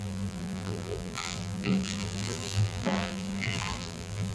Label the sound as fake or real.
fake